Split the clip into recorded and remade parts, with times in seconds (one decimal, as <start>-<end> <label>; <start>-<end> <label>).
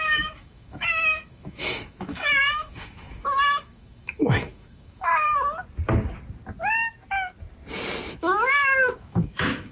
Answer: 0.0-5.1 remade; 5.1-8.1 recorded; 8.1-9.7 remade